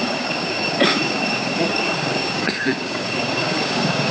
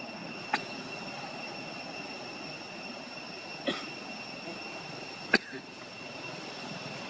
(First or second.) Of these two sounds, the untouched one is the second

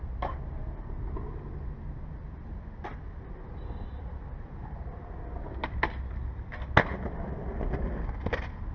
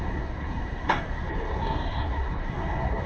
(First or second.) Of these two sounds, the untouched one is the first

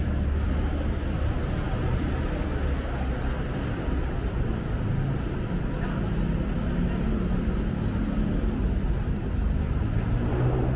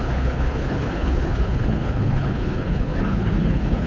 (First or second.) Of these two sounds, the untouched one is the first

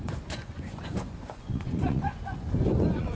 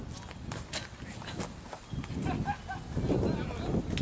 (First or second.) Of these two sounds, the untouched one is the second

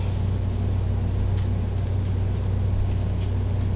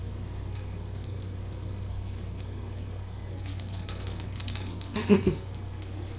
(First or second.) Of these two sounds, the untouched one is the first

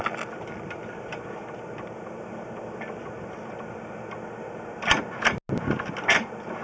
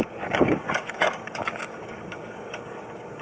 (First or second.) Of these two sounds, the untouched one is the first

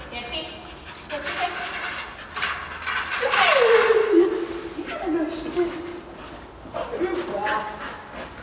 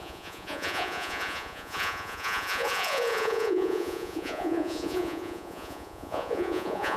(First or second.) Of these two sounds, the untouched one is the first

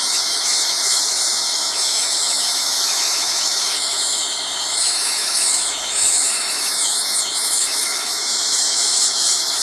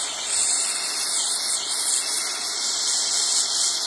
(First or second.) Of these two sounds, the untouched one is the second